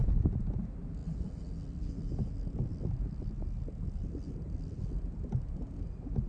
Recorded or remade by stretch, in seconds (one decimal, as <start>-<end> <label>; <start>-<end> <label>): 0.0-0.5 remade; 0.5-1.0 recorded; 1.0-4.8 remade; 4.8-6.3 recorded